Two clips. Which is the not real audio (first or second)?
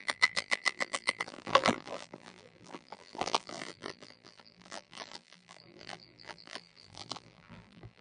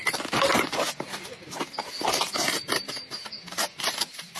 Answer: first